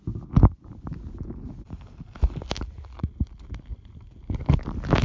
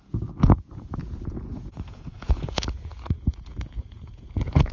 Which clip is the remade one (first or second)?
second